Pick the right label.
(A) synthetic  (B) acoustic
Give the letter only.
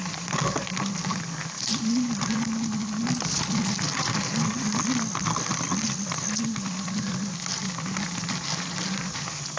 B